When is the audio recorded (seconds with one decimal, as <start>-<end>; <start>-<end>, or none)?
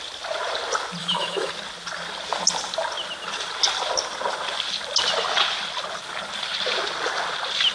0.0-1.0; 1.5-7.7